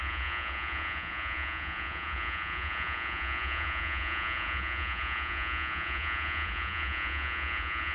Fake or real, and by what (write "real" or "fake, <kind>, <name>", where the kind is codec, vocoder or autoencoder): fake, vocoder, Vocos